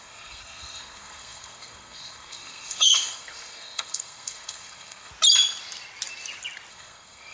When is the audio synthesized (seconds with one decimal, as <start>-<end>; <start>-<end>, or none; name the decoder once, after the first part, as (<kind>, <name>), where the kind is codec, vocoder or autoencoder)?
0.0-5.1 (codec, SNAC); 6.7-7.3